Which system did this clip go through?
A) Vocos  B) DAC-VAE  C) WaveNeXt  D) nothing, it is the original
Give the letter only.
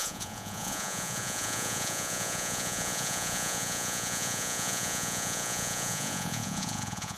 A